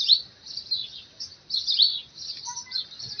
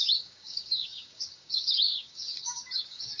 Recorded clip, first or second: first